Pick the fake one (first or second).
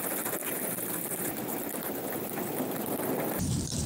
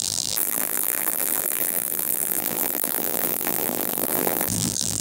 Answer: second